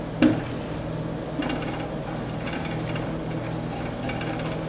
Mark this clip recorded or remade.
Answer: recorded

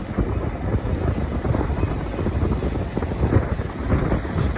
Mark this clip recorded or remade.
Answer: recorded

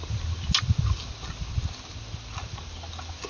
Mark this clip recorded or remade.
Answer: recorded